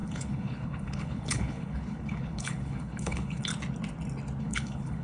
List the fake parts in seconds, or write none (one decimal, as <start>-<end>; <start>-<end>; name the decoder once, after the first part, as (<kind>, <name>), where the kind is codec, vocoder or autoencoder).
0.0-3.5 (codec, HILCodec); 4.4-5.0